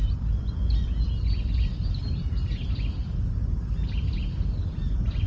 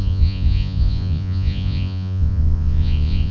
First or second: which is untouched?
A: first